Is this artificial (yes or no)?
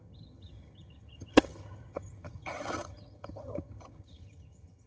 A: yes